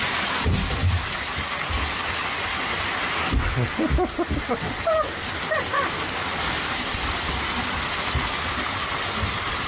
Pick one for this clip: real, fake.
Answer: real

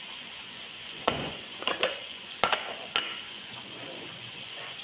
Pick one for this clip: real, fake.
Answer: fake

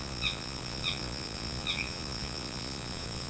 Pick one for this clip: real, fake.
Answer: fake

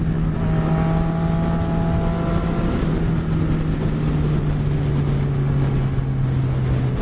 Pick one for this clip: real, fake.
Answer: real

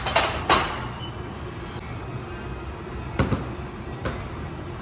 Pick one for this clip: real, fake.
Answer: real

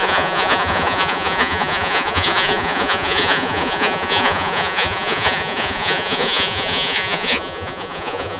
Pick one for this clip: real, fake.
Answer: fake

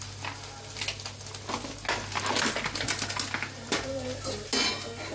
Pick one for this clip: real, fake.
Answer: real